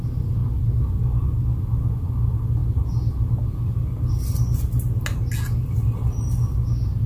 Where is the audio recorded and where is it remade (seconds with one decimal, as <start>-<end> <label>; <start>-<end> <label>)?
0.0-7.1 recorded